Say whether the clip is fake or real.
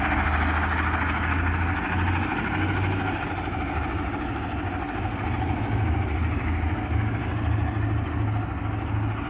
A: real